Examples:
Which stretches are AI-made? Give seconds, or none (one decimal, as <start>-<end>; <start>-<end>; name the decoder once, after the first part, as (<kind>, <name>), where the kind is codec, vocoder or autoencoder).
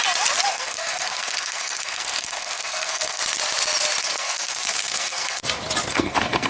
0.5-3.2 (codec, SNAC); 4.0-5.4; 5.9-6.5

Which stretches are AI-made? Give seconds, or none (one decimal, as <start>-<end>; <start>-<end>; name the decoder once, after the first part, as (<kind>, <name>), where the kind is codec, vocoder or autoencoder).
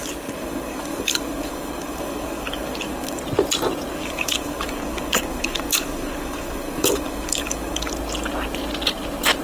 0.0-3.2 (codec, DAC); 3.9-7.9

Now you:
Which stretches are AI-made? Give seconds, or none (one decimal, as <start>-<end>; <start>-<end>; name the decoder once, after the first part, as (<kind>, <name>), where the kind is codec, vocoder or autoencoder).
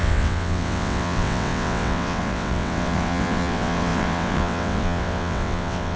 0.0-6.0 (vocoder, WaveNeXt)